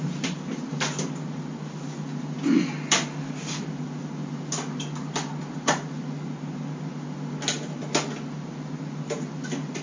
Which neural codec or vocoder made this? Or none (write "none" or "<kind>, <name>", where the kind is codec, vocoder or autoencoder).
none